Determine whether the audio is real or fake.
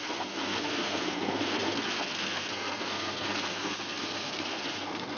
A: fake